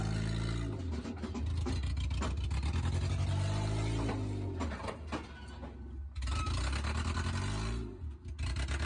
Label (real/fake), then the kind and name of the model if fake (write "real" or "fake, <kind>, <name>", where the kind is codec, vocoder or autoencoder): real